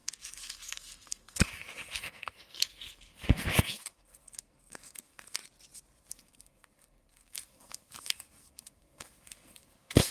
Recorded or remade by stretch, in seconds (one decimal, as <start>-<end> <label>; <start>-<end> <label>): 0.0-5.4 remade; 5.4-6.1 recorded; 6.1-10.1 remade